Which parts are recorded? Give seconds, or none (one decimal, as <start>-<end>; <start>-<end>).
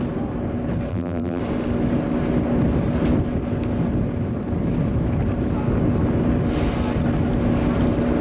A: 0.0-0.9; 1.4-8.2